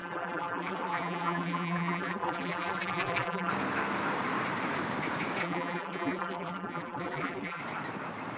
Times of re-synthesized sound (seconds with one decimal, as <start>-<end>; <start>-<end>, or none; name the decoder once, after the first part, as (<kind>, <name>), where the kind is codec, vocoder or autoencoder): 0.0-3.5 (vocoder, BigVGAN v2); 5.4-7.6